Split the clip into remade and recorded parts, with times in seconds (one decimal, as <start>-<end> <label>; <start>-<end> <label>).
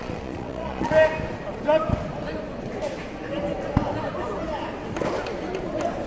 0.0-0.9 remade; 0.9-6.1 recorded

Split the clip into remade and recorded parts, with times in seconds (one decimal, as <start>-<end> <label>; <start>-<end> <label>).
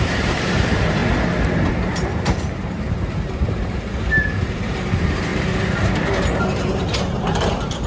0.0-1.0 remade; 1.0-1.7 recorded; 1.7-3.9 remade; 3.9-4.5 recorded; 4.5-7.9 remade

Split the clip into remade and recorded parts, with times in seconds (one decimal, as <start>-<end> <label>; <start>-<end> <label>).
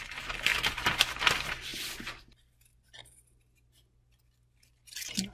0.0-0.5 recorded; 0.5-1.0 remade; 1.0-5.3 recorded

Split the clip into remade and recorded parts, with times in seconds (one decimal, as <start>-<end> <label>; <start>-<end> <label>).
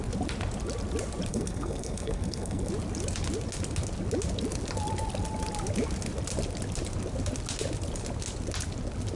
0.0-1.3 recorded; 1.3-2.7 remade; 2.7-9.2 recorded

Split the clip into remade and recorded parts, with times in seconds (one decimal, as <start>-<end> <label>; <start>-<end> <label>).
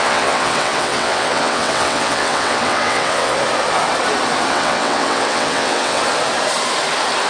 0.0-3.3 remade; 3.3-4.5 recorded; 4.5-6.0 remade; 6.0-7.3 recorded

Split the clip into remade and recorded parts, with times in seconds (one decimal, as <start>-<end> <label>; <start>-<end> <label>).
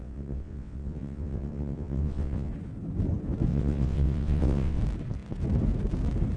0.0-2.5 remade; 2.5-3.5 recorded; 3.5-4.8 remade; 4.8-6.4 recorded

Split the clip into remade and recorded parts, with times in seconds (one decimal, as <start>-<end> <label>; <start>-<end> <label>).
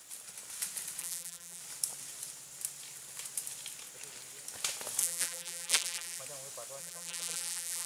0.0-1.0 recorded; 1.0-1.6 remade; 1.6-5.0 recorded; 5.0-6.2 remade; 6.2-6.8 recorded; 6.8-7.9 remade